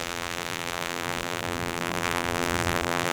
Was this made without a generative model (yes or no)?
no